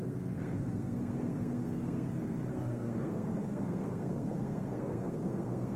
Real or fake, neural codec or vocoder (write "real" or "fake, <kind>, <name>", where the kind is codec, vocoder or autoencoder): fake, codec, SNAC